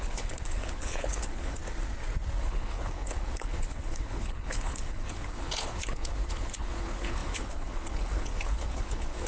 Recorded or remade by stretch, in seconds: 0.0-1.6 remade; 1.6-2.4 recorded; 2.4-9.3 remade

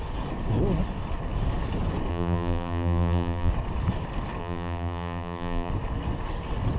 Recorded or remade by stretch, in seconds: 0.0-2.1 recorded; 2.1-3.5 remade; 3.5-4.4 recorded; 4.4-5.7 remade; 5.7-6.8 recorded

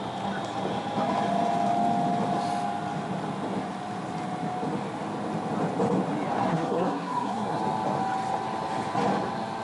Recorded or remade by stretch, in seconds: 0.0-6.5 recorded; 6.5-7.6 remade; 7.6-9.6 recorded

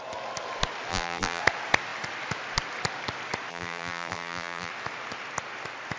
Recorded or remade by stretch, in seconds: 0.0-0.9 recorded; 0.9-1.4 remade; 1.4-3.5 recorded; 3.5-4.7 remade; 4.7-6.0 recorded

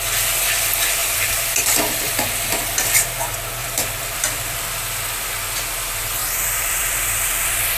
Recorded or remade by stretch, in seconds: 0.0-1.0 recorded; 1.0-2.1 remade; 2.1-3.6 recorded; 3.6-4.6 remade; 4.6-6.2 recorded; 6.2-7.3 remade; 7.3-7.8 recorded

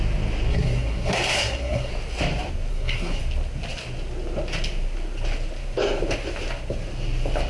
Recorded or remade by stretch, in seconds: 0.0-0.5 recorded; 0.5-1.9 remade; 1.9-2.7 recorded; 2.7-3.2 remade; 3.2-7.5 recorded

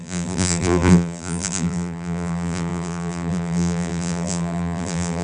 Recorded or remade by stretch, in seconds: 0.0-5.2 remade